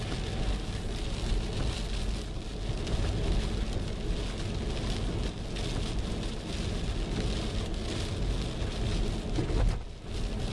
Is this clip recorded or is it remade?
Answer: recorded